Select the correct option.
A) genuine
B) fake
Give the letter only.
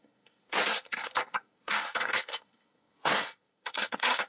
B